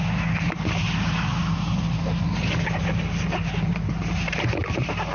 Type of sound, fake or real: real